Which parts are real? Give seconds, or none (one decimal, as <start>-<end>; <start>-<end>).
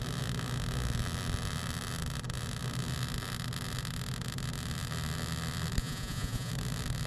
0.0-5.8; 6.5-7.1